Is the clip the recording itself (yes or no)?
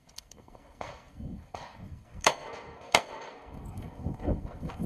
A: no